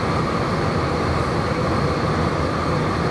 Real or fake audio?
real